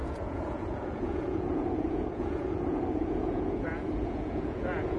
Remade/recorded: remade